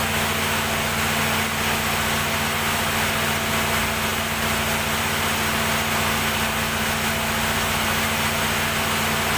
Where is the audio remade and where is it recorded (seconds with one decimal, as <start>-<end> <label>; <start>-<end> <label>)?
0.0-9.4 recorded